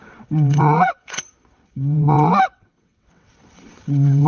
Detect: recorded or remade remade